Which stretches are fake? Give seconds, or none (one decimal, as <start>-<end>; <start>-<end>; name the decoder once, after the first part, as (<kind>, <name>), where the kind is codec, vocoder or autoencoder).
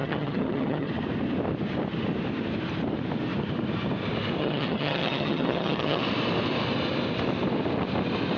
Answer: 0.0-0.9 (vocoder, HiFi-GAN); 4.4-6.0